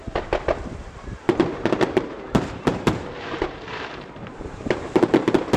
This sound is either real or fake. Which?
fake